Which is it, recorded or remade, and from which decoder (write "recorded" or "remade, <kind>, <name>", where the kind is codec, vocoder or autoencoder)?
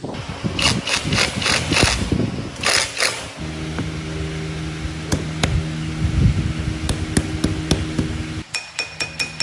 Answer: recorded